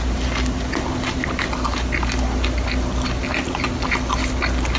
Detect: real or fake real